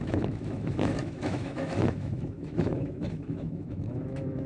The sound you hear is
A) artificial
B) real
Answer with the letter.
A